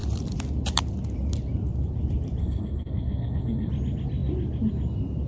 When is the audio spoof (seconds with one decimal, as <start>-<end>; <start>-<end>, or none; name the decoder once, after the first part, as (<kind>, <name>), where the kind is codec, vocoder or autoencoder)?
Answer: 2.4-3.7 (codec, SNAC)

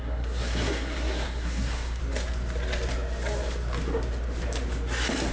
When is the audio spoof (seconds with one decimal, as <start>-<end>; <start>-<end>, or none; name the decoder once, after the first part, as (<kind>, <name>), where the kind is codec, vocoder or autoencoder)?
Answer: 0.0-2.0 (codec, SNAC)

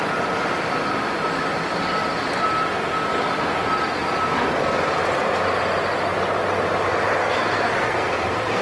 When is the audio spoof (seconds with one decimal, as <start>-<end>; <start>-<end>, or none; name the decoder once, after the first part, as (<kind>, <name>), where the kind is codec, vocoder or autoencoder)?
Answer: 7.2-8.6 (codec, SNAC)

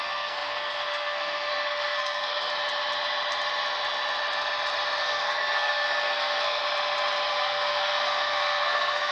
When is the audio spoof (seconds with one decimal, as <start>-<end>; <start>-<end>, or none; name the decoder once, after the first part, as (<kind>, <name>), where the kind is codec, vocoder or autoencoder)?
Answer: 0.0-2.5 (codec, SNAC); 5.0-6.6; 7.3-9.1

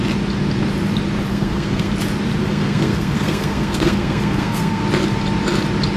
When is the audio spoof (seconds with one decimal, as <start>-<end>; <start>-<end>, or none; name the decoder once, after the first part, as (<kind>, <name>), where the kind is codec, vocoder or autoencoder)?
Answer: 1.3-1.9 (codec, SNAC); 2.4-4.8

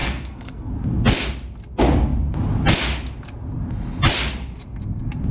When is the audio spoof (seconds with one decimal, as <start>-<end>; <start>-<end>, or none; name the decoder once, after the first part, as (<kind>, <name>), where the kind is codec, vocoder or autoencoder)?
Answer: 0.0-0.7 (codec, SNAC)

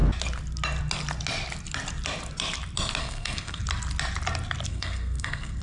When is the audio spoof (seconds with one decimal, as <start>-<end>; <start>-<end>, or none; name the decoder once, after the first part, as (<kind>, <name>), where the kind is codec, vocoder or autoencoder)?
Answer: 3.0-3.6 (codec, SNAC); 4.7-5.6

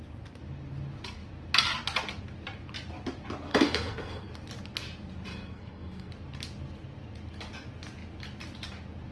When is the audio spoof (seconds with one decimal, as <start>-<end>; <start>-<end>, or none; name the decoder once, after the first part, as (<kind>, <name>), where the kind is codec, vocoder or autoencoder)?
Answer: 3.5-4.3 (codec, SNAC); 5.3-6.1